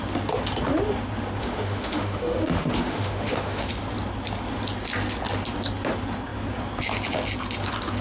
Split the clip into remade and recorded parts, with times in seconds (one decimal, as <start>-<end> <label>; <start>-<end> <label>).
0.0-1.4 recorded; 1.4-3.7 remade; 3.7-8.0 recorded